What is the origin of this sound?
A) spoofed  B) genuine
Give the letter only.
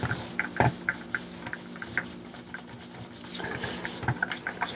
B